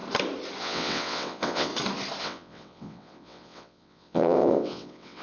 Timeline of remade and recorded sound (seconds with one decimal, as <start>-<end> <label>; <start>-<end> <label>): 0.0-0.6 recorded; 0.6-1.7 remade; 1.7-2.2 recorded; 2.2-5.2 remade